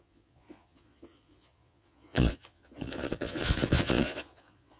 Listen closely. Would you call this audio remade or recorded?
remade